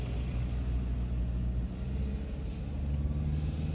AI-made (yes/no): no